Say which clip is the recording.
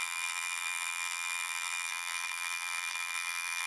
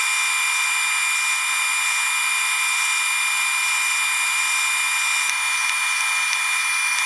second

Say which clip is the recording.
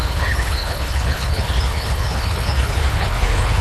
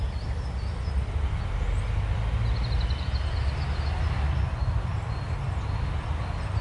second